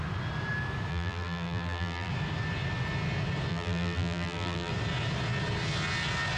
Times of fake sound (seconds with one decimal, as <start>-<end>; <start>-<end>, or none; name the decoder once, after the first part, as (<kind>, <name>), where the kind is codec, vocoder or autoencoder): 0.9-2.1 (vocoder, BigVGAN v2); 3.5-4.7